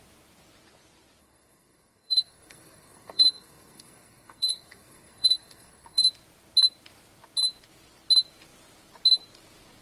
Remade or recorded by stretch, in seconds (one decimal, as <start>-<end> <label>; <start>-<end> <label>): 0.0-1.2 recorded; 1.2-6.1 remade; 6.1-9.8 recorded